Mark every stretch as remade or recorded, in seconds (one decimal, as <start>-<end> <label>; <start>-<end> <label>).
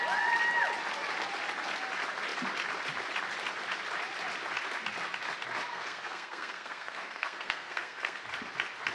0.0-5.7 recorded; 5.7-8.2 remade; 8.2-8.9 recorded